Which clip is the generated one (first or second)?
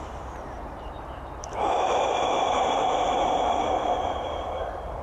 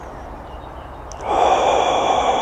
first